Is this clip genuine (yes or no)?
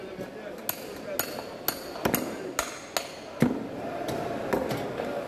yes